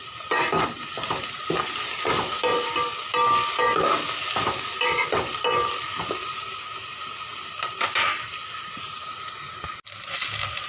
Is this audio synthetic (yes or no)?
no